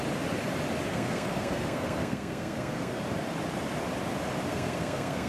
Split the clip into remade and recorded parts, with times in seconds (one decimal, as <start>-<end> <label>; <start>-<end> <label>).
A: 0.0-0.9 recorded; 0.9-3.0 remade; 3.0-4.5 recorded; 4.5-5.3 remade